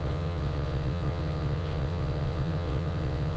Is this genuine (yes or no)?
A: no